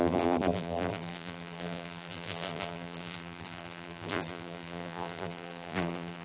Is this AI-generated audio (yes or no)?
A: yes